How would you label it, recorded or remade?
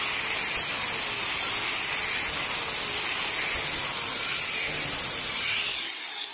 recorded